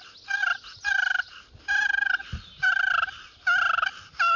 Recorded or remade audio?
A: recorded